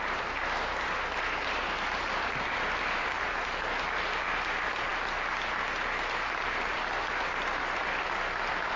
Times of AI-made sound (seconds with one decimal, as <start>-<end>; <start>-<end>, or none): 0.0-4.9; 6.7-8.8

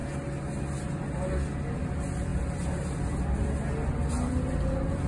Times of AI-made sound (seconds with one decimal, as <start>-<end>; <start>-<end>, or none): none

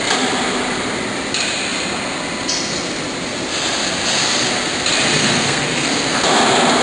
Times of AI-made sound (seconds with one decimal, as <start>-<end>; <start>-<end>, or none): 5.2-5.9

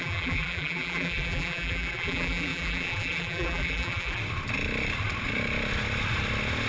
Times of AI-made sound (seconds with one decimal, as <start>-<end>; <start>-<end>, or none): 0.0-4.2

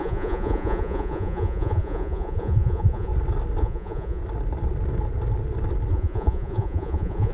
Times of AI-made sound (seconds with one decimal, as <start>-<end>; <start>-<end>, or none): 0.0-3.1; 3.6-4.2; 5.9-7.3